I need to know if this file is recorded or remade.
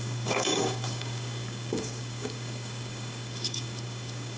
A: remade